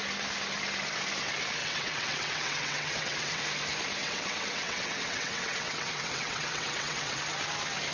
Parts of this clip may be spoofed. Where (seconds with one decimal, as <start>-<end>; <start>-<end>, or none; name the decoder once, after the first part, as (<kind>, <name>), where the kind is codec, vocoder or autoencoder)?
1.6-3.4 (vocoder, WaveNeXt); 4.0-7.2